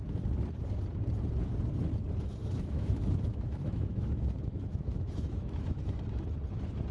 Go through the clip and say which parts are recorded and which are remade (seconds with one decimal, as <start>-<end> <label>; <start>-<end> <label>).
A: 0.0-2.4 recorded; 2.4-6.2 remade; 6.2-6.9 recorded